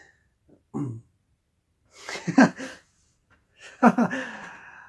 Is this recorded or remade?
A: recorded